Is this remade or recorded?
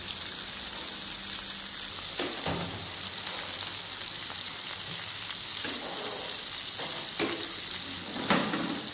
recorded